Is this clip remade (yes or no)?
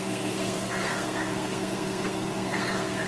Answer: yes